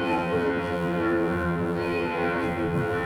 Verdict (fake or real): fake